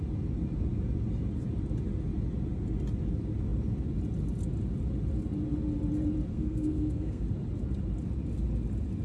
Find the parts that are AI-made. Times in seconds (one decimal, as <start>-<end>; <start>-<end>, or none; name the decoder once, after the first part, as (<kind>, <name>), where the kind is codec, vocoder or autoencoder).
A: 6.3-7.2 (codec, SNAC)